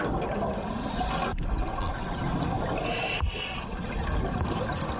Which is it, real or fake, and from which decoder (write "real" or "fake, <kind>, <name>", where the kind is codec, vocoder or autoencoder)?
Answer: real